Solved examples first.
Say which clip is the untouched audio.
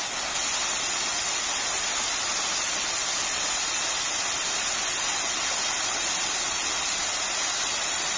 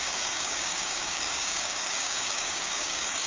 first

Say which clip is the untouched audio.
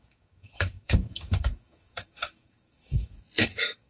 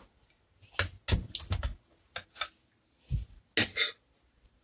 second